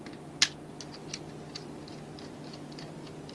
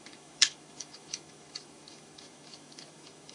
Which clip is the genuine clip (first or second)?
first